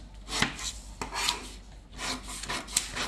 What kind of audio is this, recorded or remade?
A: recorded